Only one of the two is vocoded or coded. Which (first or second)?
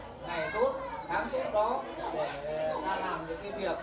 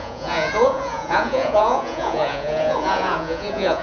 second